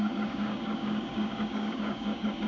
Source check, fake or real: fake